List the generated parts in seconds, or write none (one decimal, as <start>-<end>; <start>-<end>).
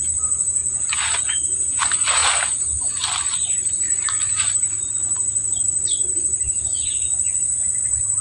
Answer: 2.2-6.8